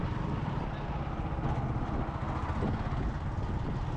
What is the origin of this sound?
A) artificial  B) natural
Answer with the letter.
B